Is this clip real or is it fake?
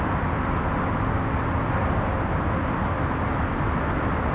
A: real